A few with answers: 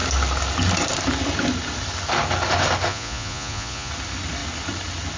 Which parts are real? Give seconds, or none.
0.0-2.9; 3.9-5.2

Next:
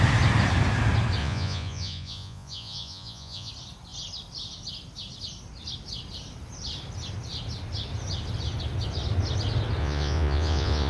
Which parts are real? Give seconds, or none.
0.0-1.2; 3.5-9.8

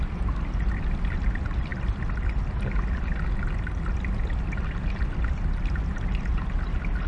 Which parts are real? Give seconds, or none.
0.0-7.1